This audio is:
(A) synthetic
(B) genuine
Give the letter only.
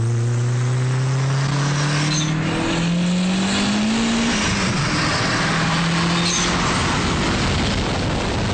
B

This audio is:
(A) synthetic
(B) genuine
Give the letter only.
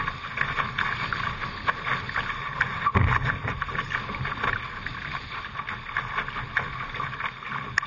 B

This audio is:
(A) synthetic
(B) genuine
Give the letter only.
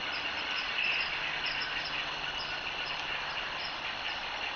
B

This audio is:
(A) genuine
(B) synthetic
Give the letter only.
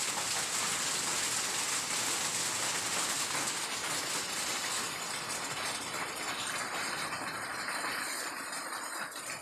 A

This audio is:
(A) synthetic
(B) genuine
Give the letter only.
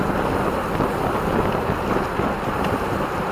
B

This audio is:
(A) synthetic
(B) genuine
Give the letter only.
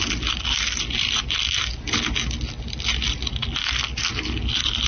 B